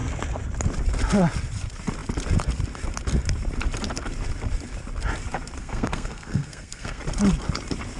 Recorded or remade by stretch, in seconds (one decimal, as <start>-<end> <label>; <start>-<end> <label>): 0.0-5.6 recorded; 5.6-7.0 remade; 7.0-8.0 recorded